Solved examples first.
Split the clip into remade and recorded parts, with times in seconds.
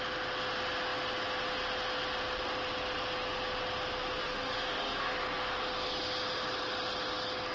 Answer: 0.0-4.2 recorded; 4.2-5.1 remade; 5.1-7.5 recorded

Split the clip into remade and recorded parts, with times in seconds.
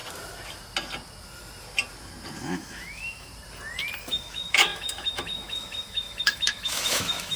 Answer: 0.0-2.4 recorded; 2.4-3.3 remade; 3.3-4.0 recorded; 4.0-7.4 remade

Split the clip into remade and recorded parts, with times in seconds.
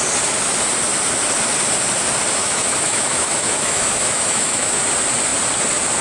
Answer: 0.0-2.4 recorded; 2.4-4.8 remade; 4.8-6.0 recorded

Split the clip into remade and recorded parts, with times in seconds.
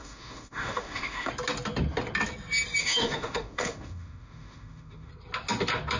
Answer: 0.0-1.3 remade; 1.3-2.8 recorded; 2.8-5.1 remade; 5.1-6.0 recorded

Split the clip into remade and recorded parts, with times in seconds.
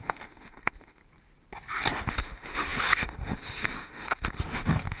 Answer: 0.0-1.0 remade; 1.0-2.1 recorded; 2.1-5.0 remade